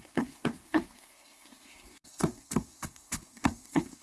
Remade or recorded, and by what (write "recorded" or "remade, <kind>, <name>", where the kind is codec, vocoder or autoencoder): remade, codec, SNAC